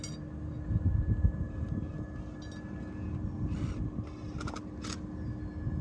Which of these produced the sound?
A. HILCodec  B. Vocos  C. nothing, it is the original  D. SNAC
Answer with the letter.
C